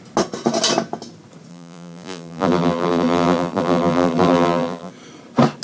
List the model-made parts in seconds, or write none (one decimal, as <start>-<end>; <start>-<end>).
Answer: 1.5-4.9